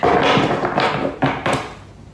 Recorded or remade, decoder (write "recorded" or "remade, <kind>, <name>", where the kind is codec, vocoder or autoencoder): recorded